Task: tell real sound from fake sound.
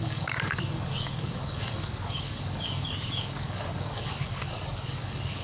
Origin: fake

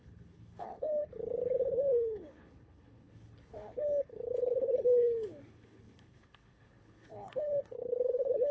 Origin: fake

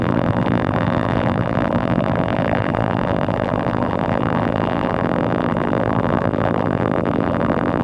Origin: fake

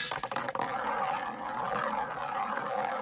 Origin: real